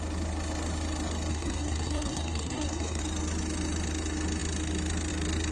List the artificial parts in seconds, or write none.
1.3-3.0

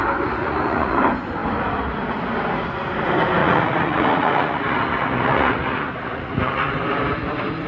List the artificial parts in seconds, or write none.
0.4-1.0; 3.4-6.7